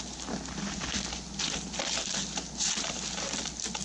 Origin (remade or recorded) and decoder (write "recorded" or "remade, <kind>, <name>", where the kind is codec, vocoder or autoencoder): recorded